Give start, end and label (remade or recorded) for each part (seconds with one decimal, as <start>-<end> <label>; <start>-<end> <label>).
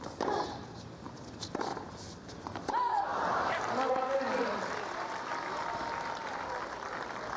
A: 0.0-1.7 recorded; 1.7-2.3 remade; 2.3-3.1 recorded; 3.1-7.4 remade